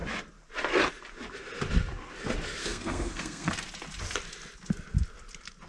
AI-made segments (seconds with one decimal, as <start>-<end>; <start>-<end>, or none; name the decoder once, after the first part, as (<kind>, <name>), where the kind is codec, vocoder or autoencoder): 2.6-3.5 (codec, SNAC)